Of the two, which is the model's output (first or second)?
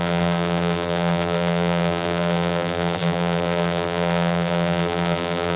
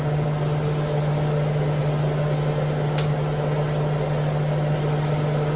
first